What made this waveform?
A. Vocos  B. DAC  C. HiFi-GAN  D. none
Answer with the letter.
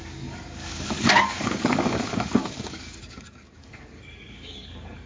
B